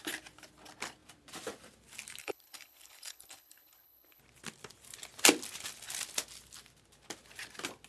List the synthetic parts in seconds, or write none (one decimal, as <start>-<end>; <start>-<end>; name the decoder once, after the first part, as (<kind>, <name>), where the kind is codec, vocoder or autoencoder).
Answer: 2.2-4.2 (codec, HILCodec)